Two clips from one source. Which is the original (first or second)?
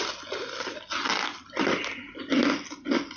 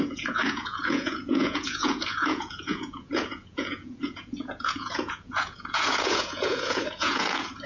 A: first